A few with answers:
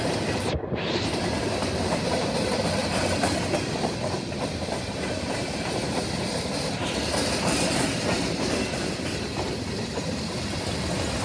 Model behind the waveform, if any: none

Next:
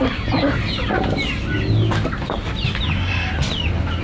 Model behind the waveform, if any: none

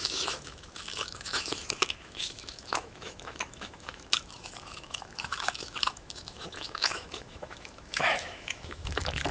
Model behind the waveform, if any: autoencoder, DAC-VAE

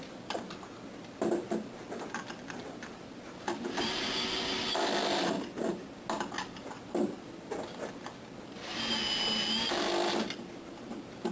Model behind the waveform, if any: none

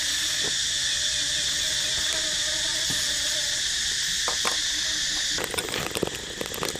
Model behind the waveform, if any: none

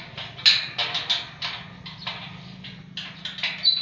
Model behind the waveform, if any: none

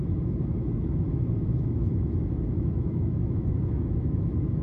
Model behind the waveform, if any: autoencoder, DAC-VAE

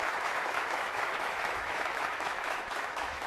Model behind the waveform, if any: autoencoder, DAC-VAE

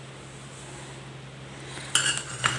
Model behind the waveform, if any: none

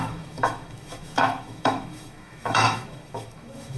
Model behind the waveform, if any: autoencoder, DAC-VAE